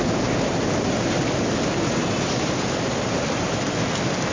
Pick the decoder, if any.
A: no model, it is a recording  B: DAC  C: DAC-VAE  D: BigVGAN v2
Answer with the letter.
A